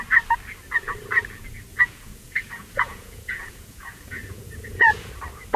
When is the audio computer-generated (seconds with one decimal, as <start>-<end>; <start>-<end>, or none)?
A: 1.7-5.1